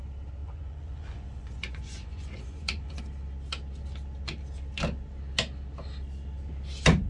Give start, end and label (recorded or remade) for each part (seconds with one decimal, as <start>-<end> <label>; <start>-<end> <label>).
0.0-0.4 recorded; 0.4-3.0 remade; 3.0-7.1 recorded